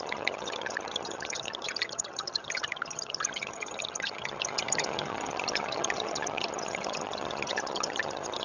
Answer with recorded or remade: remade